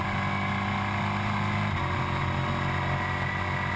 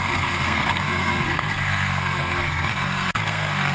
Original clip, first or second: first